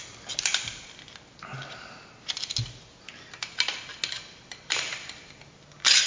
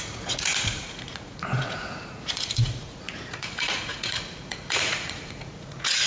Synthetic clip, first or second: second